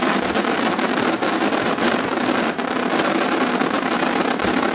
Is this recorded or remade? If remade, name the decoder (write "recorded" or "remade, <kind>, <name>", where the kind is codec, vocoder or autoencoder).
recorded